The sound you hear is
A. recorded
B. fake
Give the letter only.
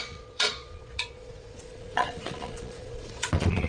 B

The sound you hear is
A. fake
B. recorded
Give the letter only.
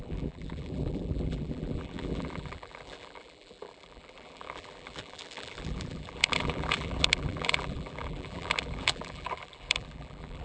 A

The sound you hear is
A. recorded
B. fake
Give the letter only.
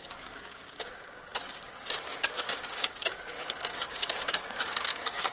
B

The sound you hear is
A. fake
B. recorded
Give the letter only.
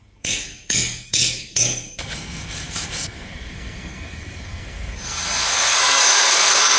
A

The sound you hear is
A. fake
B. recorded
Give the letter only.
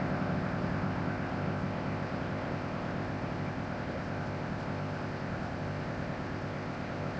A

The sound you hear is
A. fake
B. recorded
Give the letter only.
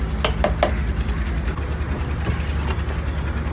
B